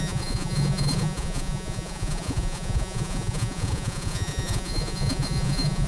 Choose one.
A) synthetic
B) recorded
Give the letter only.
A